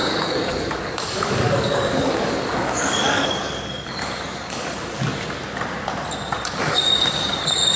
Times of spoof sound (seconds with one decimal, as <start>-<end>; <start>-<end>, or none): 0.0-5.1; 6.6-7.8